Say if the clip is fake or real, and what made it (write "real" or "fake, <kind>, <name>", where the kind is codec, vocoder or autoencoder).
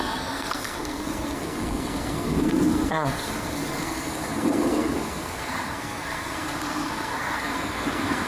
fake, codec, SNAC